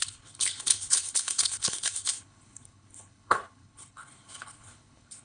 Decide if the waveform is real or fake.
fake